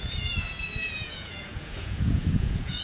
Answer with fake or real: fake